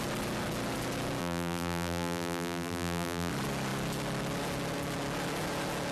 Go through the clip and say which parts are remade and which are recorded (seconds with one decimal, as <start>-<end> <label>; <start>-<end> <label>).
0.0-1.2 recorded; 1.2-3.3 remade; 3.3-5.9 recorded